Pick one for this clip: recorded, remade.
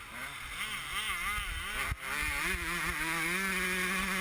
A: recorded